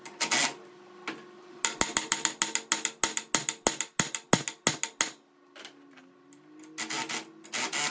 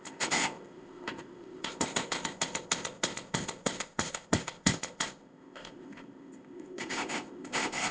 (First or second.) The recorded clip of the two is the first